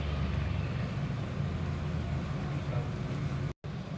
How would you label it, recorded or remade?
recorded